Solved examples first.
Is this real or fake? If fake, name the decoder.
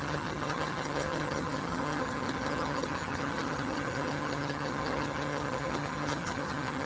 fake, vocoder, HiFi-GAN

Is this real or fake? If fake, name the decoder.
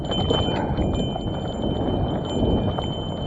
real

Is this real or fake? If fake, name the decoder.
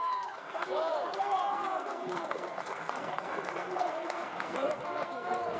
fake, codec, SNAC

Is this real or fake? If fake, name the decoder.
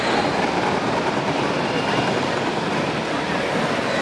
real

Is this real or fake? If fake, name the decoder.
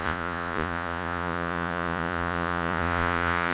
fake, vocoder, Vocos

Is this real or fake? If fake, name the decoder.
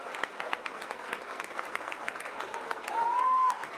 fake, codec, SNAC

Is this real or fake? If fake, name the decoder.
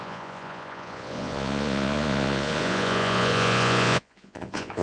fake, vocoder, Vocos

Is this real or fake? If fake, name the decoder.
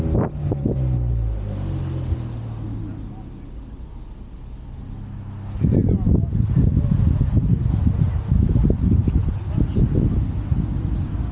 real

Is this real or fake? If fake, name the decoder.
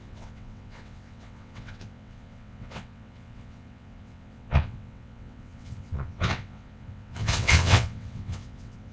fake, vocoder, WaveNeXt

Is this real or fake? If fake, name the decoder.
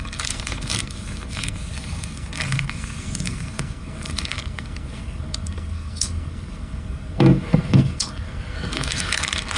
fake, codec, SNAC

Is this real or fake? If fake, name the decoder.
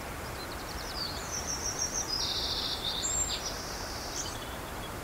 fake, vocoder, BigVGAN v2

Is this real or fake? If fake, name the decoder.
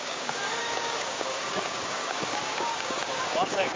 fake, codec, DAC